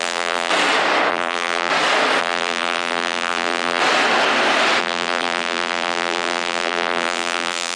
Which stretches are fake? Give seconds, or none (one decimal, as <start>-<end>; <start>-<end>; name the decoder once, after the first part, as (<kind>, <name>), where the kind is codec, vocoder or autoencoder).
0.0-0.5 (vocoder, BigVGAN v2); 1.1-1.7; 2.2-3.8; 4.8-7.8